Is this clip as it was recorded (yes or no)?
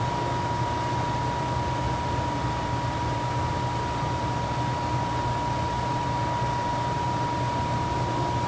yes